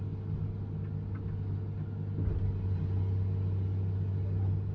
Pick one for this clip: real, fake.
real